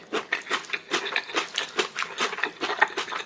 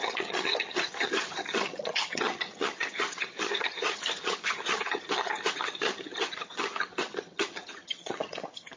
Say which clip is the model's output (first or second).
second